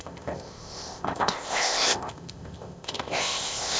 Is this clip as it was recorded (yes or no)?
no